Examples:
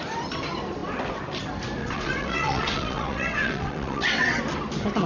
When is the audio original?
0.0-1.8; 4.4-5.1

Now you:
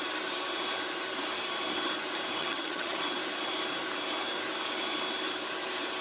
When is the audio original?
0.0-2.4; 3.0-6.0

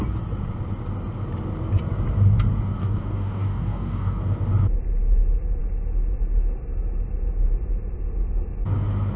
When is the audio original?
0.0-2.8; 4.2-9.2